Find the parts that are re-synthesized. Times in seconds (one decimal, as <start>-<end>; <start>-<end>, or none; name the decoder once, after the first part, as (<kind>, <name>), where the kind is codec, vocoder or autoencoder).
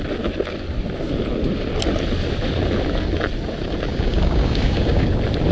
3.9-5.1 (codec, DAC)